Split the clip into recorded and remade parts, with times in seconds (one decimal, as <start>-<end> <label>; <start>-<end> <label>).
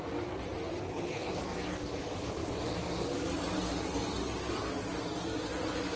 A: 0.0-0.8 recorded; 0.8-1.4 remade; 1.4-6.0 recorded